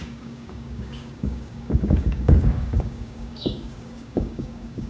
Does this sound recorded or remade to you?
remade